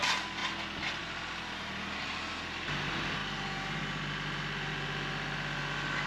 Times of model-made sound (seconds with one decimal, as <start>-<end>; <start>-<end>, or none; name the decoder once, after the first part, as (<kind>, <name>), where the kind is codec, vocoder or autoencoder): none